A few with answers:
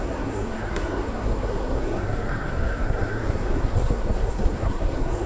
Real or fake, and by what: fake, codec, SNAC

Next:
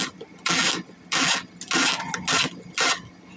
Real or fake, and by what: real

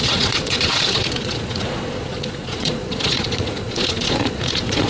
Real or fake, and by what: fake, vocoder, Vocos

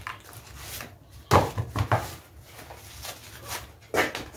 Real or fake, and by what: real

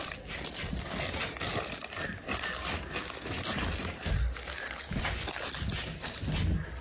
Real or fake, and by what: real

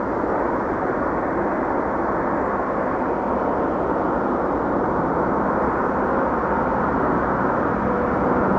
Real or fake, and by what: real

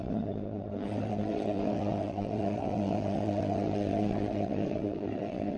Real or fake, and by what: fake, vocoder, WaveNeXt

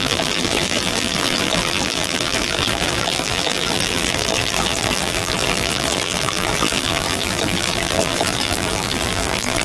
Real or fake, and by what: fake, vocoder, BigVGAN v2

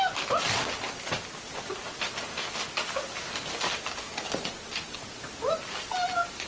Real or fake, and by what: real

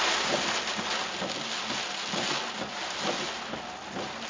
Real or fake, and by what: real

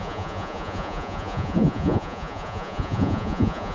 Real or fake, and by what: fake, vocoder, Vocos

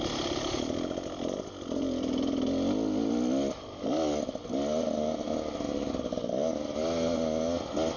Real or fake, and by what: real